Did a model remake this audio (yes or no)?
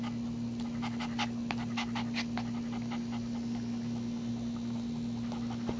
no